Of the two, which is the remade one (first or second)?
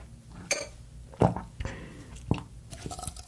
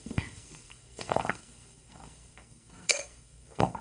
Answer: second